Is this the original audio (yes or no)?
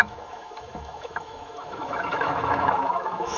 no